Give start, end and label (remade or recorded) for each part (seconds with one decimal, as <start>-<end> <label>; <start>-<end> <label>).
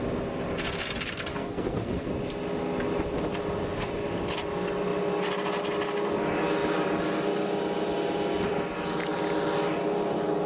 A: 0.0-1.3 recorded; 1.3-2.1 remade; 2.1-10.5 recorded